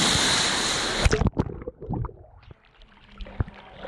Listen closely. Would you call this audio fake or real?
real